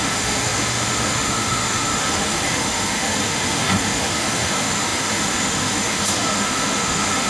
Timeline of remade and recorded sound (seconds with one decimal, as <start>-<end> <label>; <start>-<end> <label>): 0.0-7.3 remade